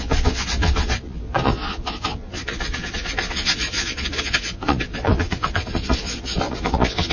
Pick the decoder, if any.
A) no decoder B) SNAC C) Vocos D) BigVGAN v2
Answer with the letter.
C